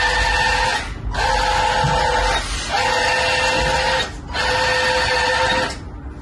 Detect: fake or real real